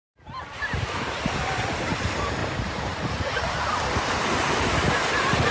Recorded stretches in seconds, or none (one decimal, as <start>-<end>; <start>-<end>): 1.8-2.4; 4.4-5.5